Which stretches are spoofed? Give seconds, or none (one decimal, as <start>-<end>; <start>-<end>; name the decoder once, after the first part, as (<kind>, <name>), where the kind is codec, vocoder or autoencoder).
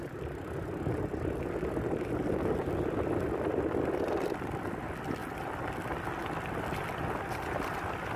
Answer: none